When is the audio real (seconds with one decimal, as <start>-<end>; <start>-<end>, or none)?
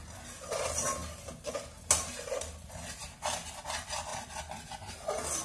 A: 0.0-5.4